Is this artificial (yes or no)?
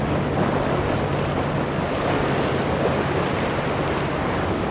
no